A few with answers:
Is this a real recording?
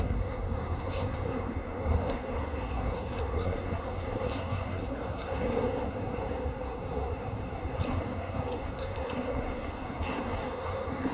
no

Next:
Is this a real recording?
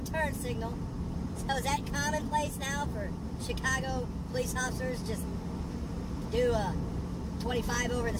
yes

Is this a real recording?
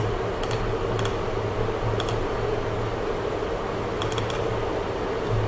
yes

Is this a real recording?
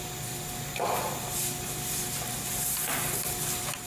yes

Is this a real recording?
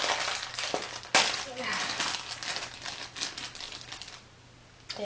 yes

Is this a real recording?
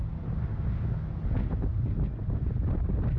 yes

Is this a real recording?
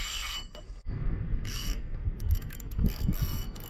no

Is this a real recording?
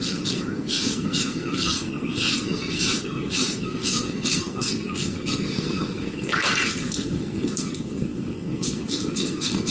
no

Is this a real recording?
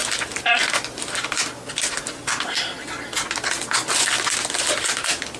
yes